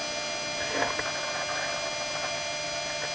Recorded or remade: recorded